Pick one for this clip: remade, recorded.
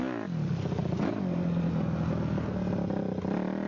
recorded